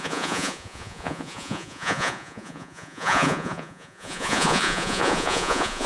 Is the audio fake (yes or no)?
yes